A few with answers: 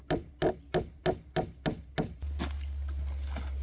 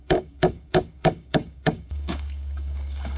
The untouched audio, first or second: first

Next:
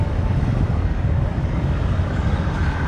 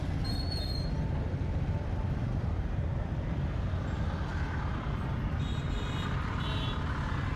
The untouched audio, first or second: second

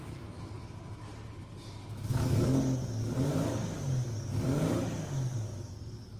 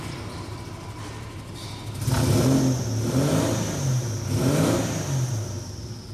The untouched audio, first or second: second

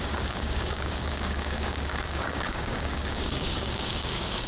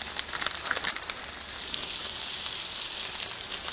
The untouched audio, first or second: second